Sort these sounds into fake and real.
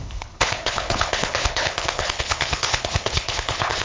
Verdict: fake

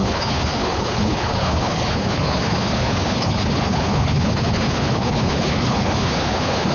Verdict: fake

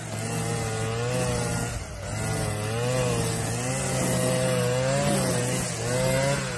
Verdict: real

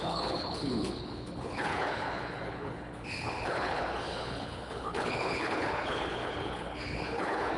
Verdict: fake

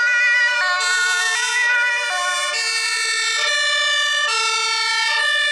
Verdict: real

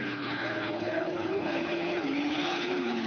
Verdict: fake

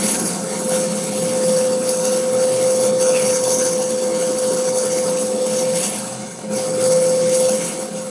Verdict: fake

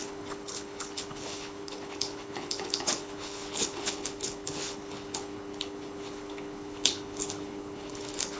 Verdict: fake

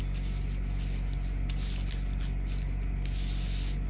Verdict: real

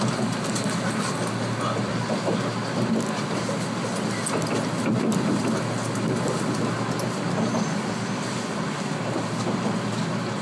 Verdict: real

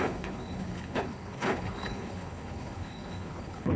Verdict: fake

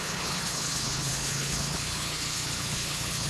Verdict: fake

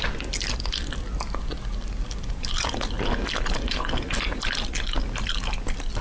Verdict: real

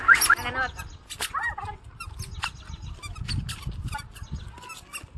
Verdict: real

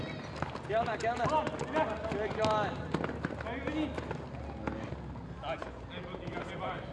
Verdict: real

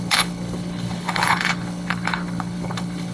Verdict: fake